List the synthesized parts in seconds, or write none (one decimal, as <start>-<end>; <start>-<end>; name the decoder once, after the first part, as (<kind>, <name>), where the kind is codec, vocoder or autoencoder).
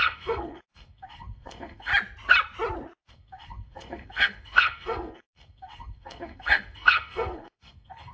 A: 0.0-1.9 (codec, SNAC); 3.1-8.1